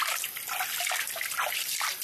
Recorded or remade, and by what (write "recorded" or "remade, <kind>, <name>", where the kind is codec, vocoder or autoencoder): recorded